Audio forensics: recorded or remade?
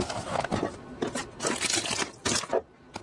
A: recorded